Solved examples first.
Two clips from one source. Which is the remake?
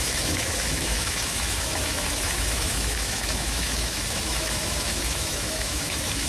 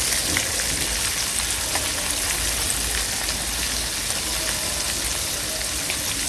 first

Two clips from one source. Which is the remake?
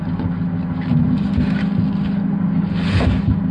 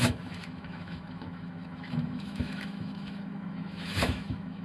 second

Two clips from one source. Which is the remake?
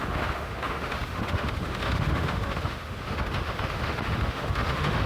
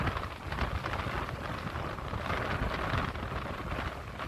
first